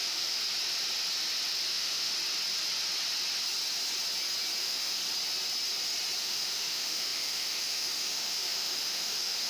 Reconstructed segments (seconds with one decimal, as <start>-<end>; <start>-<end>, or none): 0.0-0.4; 1.7-2.1; 4.6-5.0; 6.2-9.5